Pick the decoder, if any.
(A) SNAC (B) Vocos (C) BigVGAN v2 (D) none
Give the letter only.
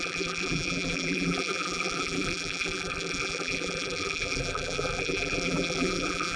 C